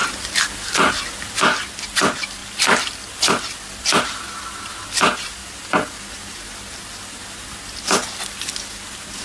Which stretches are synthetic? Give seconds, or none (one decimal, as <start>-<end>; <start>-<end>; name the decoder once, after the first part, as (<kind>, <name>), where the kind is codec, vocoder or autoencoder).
none